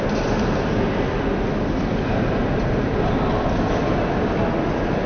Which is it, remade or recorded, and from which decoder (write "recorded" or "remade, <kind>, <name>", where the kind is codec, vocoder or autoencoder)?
recorded